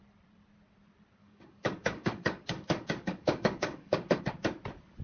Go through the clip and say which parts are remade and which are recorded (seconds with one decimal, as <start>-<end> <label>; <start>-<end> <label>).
0.0-1.2 recorded; 1.2-4.2 remade; 4.2-5.0 recorded